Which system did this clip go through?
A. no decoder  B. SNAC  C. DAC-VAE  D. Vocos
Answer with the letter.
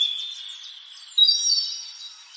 A